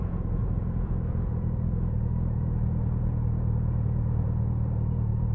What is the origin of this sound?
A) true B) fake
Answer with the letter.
B